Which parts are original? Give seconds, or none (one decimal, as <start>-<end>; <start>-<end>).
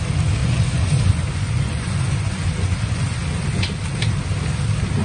0.0-0.4; 3.4-5.0